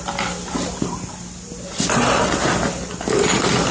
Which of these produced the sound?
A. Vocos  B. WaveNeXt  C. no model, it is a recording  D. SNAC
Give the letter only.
C